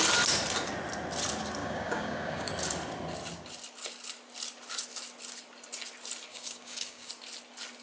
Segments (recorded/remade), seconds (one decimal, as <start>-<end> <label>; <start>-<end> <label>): 0.0-1.6 recorded; 1.6-2.5 remade; 2.5-6.3 recorded; 6.3-7.1 remade; 7.1-7.8 recorded